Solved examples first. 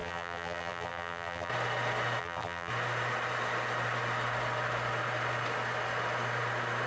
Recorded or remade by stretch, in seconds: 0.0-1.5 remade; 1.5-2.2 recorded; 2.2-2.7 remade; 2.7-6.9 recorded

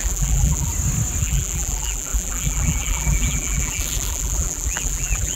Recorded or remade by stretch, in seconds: 0.0-0.7 remade; 0.7-1.2 recorded; 1.2-5.4 remade

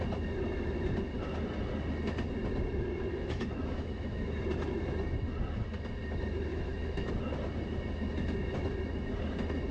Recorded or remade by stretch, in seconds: 0.0-3.1 recorded; 3.1-4.4 remade; 4.4-6.5 recorded; 6.5-7.1 remade; 7.1-9.7 recorded

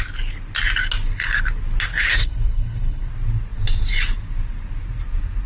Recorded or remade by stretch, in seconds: 0.0-1.9 recorded; 1.9-3.1 remade; 3.1-5.5 recorded